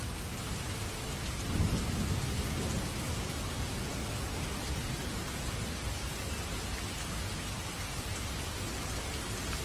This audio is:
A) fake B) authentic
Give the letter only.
B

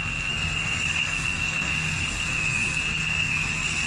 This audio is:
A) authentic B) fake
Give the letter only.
B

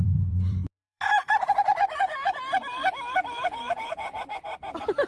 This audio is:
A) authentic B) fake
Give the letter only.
B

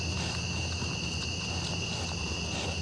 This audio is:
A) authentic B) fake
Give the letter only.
A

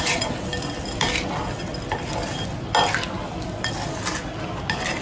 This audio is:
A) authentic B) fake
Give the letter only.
A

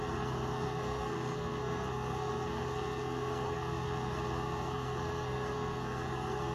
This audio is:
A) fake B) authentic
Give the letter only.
A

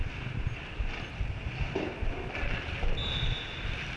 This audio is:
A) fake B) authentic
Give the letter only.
B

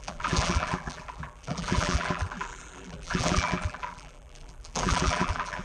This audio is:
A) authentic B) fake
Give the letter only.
B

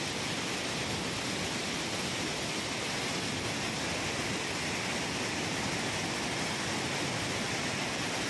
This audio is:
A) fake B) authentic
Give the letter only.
B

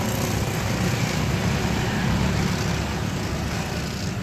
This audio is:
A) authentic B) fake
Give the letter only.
A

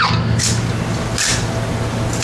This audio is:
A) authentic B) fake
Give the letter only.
A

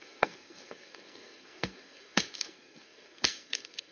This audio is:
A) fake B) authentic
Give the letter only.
A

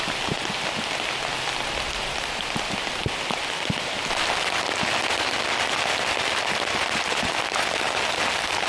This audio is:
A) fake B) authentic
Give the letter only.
B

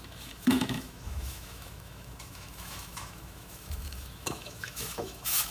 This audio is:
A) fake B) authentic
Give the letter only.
A